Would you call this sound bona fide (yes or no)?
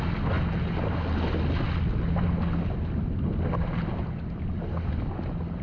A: yes